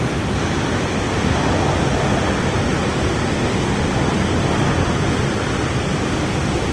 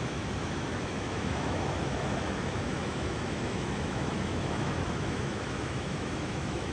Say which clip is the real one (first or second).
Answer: first